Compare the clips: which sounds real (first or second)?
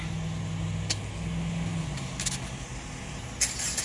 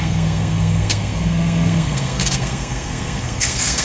first